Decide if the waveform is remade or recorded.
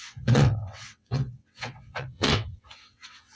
remade